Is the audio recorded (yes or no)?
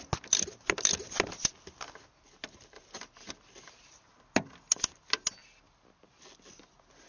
yes